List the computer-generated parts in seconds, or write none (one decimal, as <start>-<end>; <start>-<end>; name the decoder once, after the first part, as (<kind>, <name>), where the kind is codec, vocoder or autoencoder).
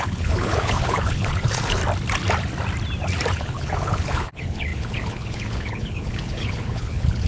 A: 0.0-1.8 (codec, HILCodec); 3.3-7.3